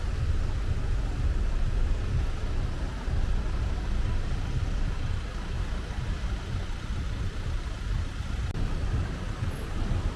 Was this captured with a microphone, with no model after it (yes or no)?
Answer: yes